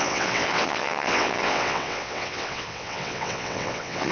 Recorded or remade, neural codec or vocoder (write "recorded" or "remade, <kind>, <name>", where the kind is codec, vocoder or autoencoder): remade, vocoder, WaveNeXt